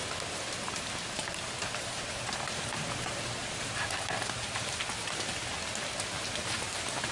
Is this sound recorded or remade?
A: remade